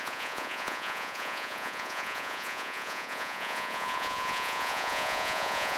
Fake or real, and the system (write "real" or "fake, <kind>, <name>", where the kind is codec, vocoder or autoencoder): fake, vocoder, Vocos